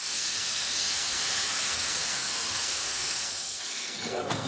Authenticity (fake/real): fake